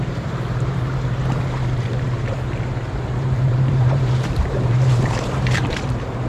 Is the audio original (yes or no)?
no